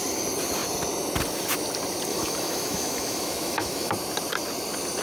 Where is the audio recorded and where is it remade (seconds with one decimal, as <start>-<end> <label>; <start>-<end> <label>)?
0.0-2.1 recorded; 2.1-3.9 remade; 3.9-5.0 recorded